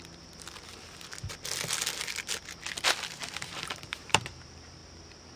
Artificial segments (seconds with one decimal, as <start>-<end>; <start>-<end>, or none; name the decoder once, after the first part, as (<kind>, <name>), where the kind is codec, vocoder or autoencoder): 0.0-0.7 (vocoder, BigVGAN v2); 3.1-4.8